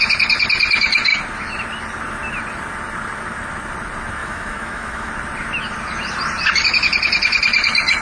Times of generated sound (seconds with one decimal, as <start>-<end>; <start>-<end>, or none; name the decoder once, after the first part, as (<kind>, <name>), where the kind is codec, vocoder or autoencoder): 4.2-5.1 (autoencoder, DAC-VAE)

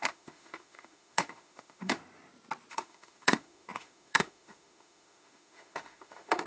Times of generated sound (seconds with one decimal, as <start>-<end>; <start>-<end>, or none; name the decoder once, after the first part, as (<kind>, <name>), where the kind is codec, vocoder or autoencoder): 0.0-2.0 (autoencoder, DAC-VAE); 2.7-6.5

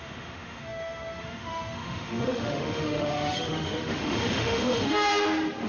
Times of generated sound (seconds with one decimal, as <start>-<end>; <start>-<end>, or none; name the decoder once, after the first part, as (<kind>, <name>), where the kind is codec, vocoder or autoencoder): 0.0-5.1 (autoencoder, DAC-VAE)

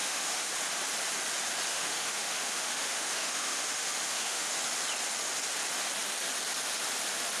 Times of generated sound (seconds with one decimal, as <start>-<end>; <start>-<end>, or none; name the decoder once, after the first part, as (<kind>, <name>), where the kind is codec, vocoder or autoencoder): 0.0-0.5 (autoencoder, DAC-VAE); 1.7-4.5